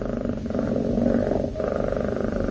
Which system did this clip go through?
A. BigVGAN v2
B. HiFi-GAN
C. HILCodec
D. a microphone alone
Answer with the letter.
D